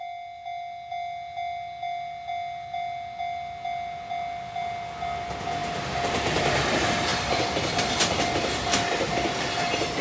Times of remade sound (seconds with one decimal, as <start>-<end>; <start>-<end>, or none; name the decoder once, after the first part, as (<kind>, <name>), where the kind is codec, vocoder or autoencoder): 7.1-7.9 (vocoder, BigVGAN v2)